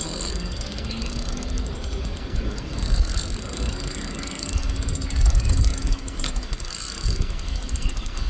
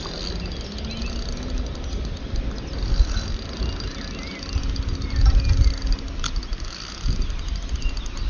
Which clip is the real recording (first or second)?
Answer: second